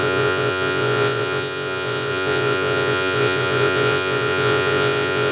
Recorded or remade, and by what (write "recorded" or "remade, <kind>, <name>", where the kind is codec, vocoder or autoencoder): remade, vocoder, Vocos